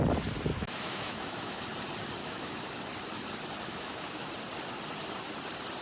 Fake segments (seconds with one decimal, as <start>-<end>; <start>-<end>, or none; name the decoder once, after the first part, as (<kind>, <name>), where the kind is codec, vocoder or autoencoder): 0.5-1.6 (autoencoder, DAC-VAE); 2.2-2.7; 3.7-4.3